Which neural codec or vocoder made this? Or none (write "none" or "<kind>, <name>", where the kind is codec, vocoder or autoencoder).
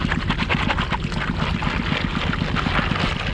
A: none